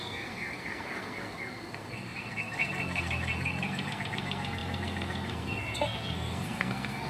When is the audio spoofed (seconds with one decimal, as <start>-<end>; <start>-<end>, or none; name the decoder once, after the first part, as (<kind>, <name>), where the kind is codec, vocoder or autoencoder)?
0.0-7.1 (codec, SNAC)